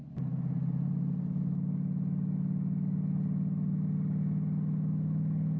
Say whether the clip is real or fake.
real